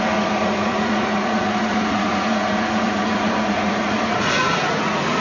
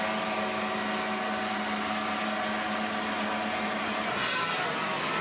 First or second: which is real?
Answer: second